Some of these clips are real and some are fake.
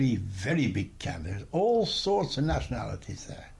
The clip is real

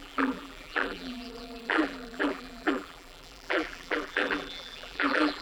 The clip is fake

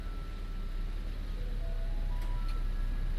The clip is real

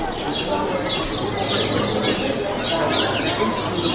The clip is real